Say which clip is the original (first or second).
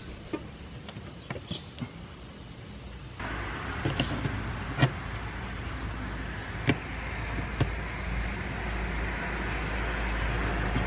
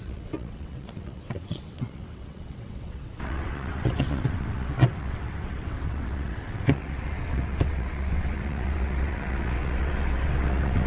first